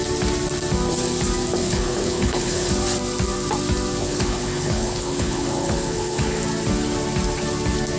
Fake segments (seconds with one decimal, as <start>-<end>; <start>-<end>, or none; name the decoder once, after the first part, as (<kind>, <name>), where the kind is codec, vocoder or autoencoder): 1.6-2.7 (codec, HILCodec); 4.0-6.4